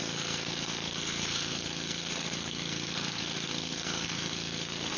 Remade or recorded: remade